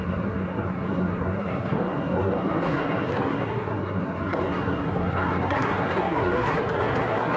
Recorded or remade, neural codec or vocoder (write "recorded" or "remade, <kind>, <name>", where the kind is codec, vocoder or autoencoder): remade, codec, SNAC